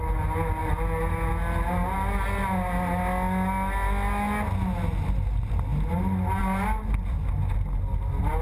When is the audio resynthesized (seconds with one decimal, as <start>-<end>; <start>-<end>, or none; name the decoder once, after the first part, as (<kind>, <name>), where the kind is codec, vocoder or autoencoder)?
none